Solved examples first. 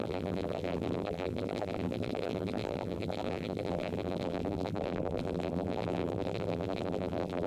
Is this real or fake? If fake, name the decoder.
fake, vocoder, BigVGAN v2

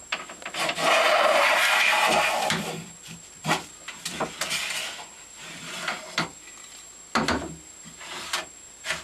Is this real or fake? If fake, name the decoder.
fake, vocoder, BigVGAN v2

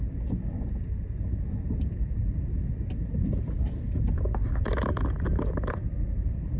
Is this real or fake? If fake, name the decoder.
fake, vocoder, BigVGAN v2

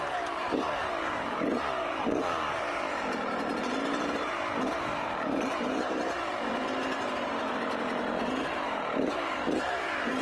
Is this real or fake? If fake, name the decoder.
fake, vocoder, BigVGAN v2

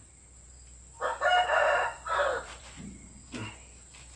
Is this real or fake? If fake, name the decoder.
fake, vocoder, BigVGAN v2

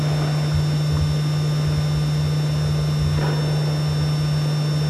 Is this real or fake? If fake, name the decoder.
real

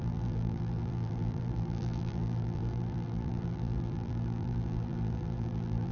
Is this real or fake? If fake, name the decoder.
fake, vocoder, BigVGAN v2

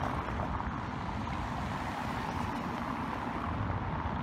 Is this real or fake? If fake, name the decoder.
real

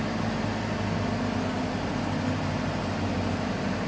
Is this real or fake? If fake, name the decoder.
real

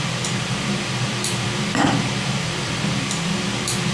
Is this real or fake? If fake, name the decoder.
fake, vocoder, BigVGAN v2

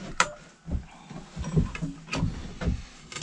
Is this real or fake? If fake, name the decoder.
real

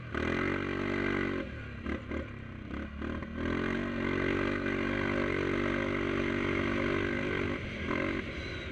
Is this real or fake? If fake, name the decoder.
real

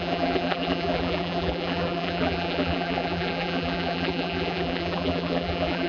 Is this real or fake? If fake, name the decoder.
fake, vocoder, BigVGAN v2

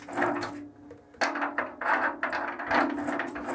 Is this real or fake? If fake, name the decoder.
real